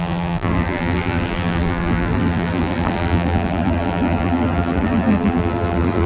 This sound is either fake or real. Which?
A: fake